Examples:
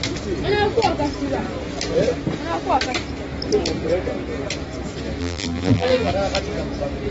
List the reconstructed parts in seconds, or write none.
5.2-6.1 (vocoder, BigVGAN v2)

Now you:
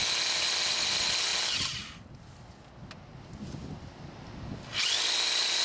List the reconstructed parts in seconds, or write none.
none